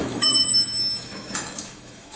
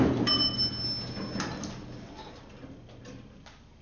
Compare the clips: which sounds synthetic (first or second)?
first